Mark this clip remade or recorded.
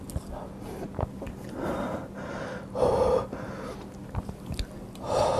recorded